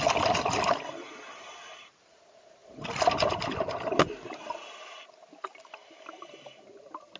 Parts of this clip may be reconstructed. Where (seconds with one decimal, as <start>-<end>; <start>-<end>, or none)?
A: none